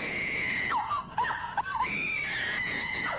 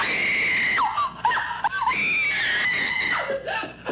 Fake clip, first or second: first